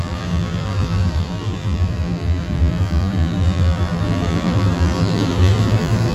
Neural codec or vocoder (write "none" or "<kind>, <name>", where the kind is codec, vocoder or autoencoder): vocoder, BigVGAN v2